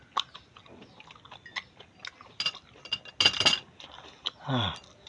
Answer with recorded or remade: recorded